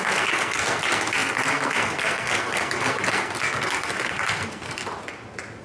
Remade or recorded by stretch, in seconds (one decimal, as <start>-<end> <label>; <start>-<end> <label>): 0.0-4.8 remade; 4.8-5.6 recorded